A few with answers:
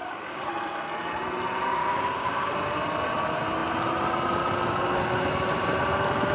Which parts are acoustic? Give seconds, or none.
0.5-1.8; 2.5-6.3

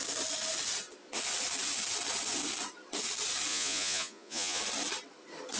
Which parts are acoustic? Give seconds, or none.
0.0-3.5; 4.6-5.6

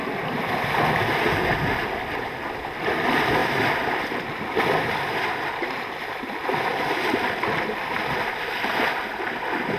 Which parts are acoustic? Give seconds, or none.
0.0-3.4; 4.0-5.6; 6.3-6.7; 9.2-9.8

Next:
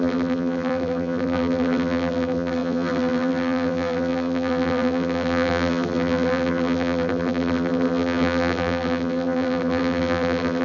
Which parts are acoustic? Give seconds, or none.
none